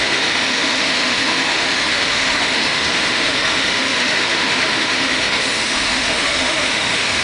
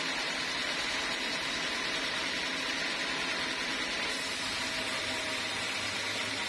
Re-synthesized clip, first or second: first